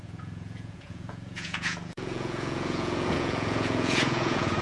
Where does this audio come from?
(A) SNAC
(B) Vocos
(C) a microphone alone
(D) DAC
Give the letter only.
B